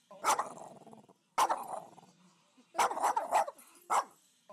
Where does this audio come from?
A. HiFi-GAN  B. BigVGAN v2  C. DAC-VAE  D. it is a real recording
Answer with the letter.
D